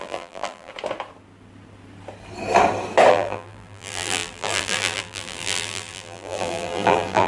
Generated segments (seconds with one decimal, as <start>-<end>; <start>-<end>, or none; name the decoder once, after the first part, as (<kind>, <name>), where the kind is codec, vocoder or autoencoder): 0.0-0.7 (vocoder, BigVGAN v2); 3.1-7.3